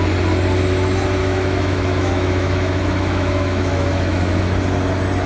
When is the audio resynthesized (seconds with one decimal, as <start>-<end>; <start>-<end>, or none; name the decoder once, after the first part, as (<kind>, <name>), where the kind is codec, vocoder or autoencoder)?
1.2-4.4 (autoencoder, DAC-VAE)